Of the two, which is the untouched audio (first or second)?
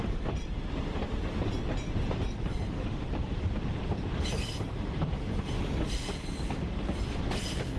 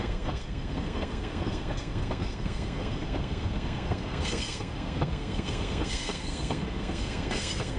first